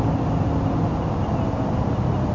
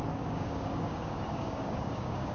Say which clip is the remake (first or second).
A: second